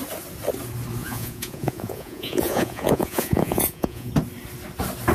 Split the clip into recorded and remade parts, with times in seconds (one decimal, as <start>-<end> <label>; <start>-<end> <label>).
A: 0.0-1.0 recorded; 1.0-4.1 remade; 4.1-5.1 recorded